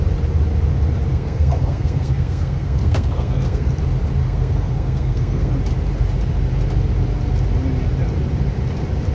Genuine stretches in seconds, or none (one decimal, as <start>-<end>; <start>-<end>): 0.0-1.1; 3.7-4.2; 5.5-9.1